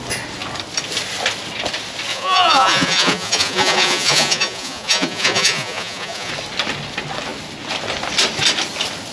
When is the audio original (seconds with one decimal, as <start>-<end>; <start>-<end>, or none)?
0.0-2.1; 6.3-9.1